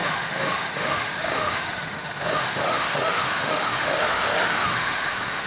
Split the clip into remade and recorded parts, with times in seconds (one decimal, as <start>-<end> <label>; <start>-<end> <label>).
0.0-5.5 remade